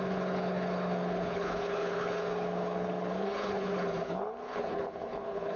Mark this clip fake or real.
fake